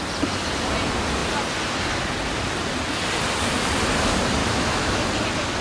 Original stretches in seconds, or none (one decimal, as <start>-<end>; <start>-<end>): 0.0-4.4; 5.0-5.6